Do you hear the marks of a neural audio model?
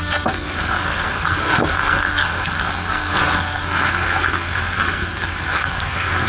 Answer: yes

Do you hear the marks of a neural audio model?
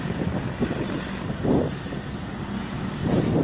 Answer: no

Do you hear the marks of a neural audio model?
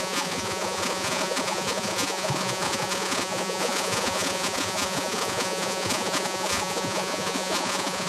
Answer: yes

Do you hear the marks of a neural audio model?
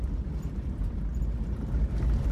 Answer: no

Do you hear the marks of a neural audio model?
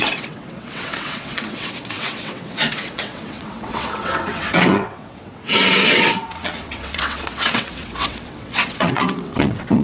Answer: yes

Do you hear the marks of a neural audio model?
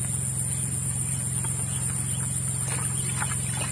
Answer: no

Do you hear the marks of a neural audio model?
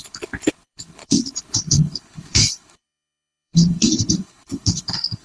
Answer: yes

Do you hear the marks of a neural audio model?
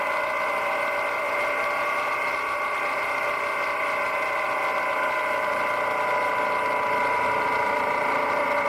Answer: no